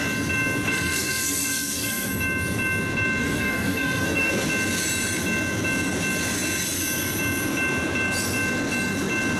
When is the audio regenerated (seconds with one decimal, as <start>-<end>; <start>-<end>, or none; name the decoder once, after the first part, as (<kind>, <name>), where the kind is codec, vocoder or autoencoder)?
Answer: 0.7-2.1 (codec, SNAC); 3.2-4.3